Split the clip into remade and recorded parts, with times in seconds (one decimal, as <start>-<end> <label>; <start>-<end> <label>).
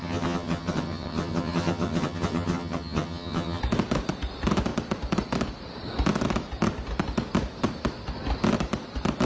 0.0-3.6 remade; 3.6-9.3 recorded